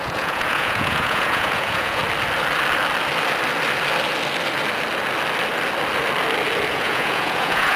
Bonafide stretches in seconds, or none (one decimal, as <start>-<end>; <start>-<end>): 2.0-6.7